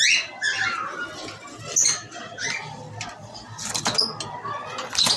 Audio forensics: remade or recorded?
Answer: recorded